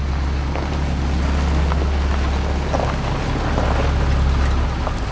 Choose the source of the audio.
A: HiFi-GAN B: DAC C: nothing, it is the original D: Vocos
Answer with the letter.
C